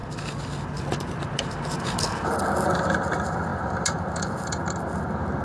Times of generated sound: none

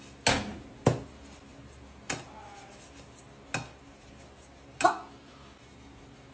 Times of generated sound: none

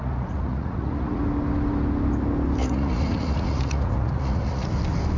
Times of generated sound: 0.0-1.2 (vocoder, Vocos); 2.6-4.7